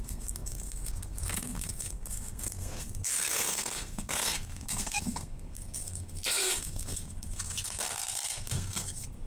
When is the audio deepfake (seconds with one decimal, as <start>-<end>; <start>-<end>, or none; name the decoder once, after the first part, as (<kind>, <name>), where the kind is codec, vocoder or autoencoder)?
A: 0.0-9.3 (codec, SNAC)